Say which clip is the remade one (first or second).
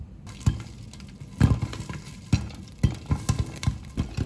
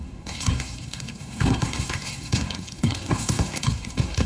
second